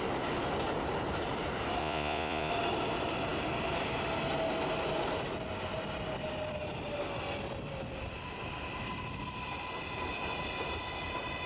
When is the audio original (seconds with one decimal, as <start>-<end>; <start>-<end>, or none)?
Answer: 0.0-1.8; 2.5-11.5